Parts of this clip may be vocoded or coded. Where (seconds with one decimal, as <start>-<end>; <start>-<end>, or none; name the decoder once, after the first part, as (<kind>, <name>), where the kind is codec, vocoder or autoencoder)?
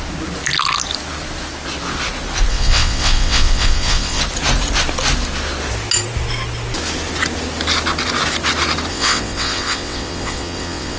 2.5-4.2 (vocoder, WaveNeXt); 8.9-11.0